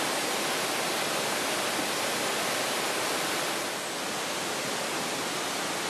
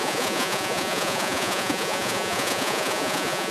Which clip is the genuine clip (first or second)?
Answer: first